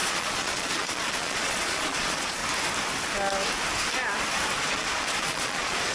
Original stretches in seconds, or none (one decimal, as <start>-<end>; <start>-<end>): 2.4-4.6